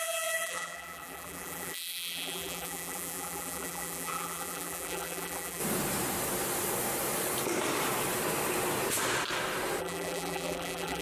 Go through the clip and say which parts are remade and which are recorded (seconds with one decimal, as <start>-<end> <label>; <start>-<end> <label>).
0.0-5.6 remade; 5.6-9.8 recorded; 9.8-11.0 remade